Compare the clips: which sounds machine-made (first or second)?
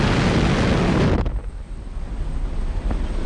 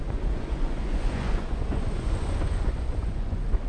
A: second